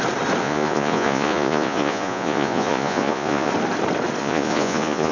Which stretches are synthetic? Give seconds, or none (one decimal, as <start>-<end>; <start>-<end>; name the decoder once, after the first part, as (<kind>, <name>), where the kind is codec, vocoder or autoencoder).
0.4-3.5 (vocoder, Vocos); 4.2-5.1